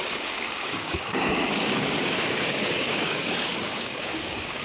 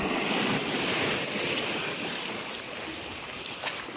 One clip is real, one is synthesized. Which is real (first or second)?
second